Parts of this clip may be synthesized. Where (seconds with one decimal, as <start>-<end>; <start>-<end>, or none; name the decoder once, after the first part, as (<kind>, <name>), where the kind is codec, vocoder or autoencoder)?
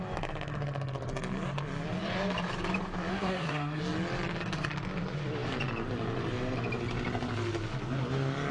3.1-3.8 (codec, SNAC)